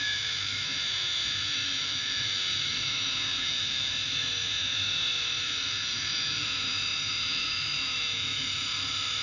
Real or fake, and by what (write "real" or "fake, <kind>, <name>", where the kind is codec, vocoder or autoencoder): fake, autoencoder, DAC-VAE